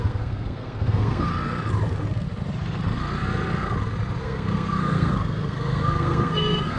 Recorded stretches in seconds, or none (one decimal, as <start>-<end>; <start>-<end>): 1.3-4.2